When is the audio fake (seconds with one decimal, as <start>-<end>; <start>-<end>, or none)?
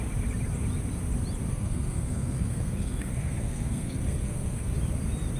1.5-4.7